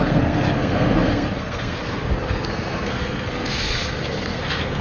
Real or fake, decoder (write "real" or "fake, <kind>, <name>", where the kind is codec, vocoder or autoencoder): fake, codec, SNAC